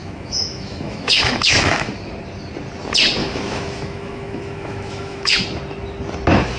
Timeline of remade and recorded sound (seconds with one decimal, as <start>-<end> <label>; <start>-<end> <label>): 0.0-1.9 remade; 1.9-3.2 recorded; 3.2-5.3 remade; 5.3-6.6 recorded